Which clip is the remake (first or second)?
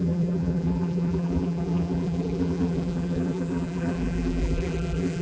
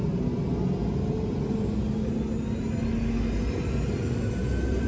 first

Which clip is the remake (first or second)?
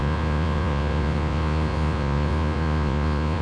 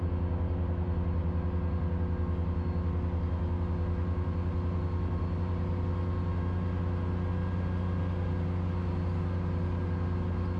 first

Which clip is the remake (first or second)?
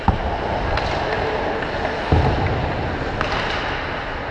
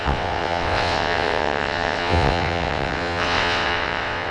second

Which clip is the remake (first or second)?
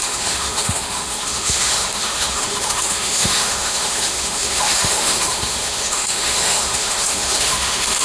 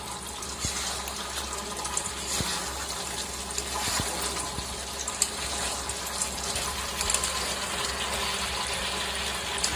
first